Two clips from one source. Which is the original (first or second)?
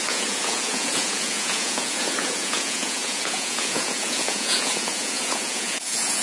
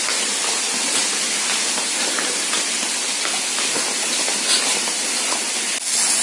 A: second